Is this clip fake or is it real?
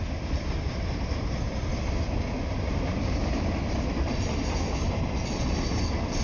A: fake